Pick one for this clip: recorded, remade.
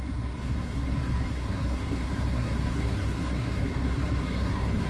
remade